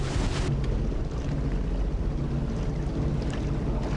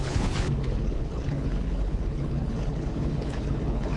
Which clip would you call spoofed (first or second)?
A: second